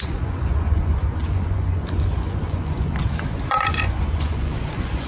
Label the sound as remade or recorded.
remade